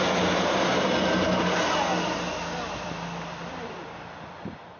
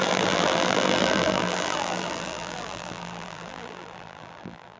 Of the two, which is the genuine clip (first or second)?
first